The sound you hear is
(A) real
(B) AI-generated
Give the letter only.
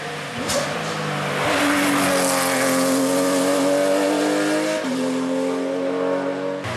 A